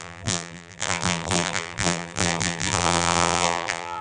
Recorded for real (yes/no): no